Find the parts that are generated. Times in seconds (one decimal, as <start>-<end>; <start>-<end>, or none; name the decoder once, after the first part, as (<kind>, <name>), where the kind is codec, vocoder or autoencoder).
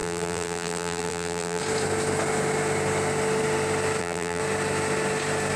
0.0-1.6 (vocoder, BigVGAN v2); 4.0-4.4